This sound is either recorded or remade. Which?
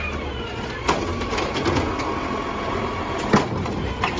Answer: recorded